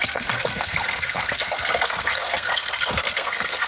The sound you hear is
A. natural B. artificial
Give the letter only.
B